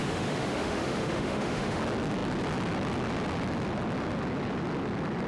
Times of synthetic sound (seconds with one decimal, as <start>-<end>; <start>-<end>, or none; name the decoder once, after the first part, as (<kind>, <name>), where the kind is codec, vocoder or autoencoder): 0.0-1.8 (autoencoder, DAC-VAE)

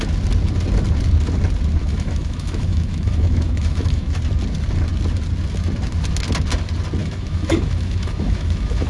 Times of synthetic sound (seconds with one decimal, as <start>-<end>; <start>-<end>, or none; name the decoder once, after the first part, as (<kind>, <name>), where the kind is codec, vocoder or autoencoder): 1.8-4.2 (autoencoder, DAC-VAE); 7.0-8.9

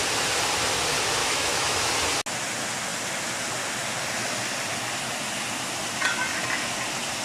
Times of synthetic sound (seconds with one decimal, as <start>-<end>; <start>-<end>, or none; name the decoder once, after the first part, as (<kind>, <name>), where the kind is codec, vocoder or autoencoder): 1.2-1.9 (autoencoder, DAC-VAE)

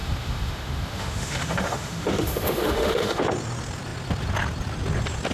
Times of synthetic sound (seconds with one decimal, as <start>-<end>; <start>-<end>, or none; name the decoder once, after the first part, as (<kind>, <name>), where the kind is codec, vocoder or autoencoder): 0.0-3.2 (autoencoder, DAC-VAE)

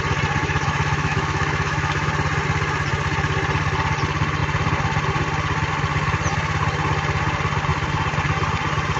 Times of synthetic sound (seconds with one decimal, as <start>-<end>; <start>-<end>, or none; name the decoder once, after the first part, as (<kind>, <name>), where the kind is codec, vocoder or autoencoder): 0.4-2.1 (autoencoder, DAC-VAE)

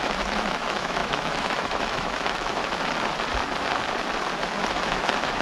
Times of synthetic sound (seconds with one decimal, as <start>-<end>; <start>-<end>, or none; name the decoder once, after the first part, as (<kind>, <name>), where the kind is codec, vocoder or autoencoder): 0.0-2.6 (autoencoder, DAC-VAE); 4.7-5.4

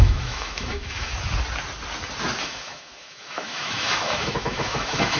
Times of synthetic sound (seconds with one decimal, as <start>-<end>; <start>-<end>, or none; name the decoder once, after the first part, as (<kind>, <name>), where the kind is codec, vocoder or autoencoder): 0.0-1.1 (autoencoder, DAC-VAE); 2.4-5.2

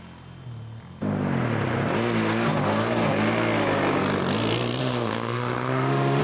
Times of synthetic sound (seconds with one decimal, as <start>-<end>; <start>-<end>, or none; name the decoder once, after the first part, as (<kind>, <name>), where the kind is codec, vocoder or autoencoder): 4.8-6.2 (autoencoder, DAC-VAE)